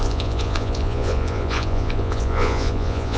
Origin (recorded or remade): remade